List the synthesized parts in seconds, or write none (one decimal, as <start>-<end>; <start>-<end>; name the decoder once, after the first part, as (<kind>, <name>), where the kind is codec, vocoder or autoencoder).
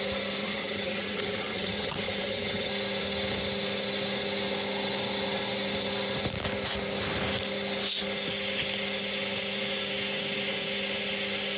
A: 0.4-2.7 (vocoder, HiFi-GAN)